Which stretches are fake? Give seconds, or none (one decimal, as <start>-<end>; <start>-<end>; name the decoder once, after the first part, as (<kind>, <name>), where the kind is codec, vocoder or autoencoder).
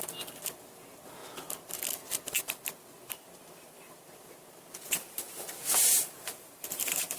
5.9-7.2 (vocoder, BigVGAN v2)